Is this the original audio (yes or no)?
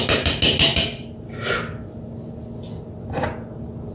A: yes